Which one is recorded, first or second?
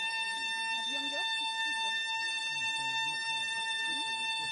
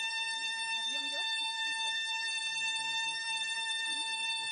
first